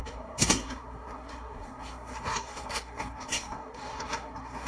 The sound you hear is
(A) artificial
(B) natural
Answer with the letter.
A